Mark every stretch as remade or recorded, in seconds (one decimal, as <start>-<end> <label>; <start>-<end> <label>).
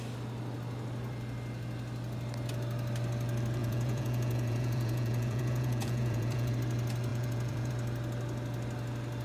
0.0-3.6 recorded; 3.6-6.5 remade; 6.5-7.1 recorded; 7.1-7.7 remade; 7.7-9.2 recorded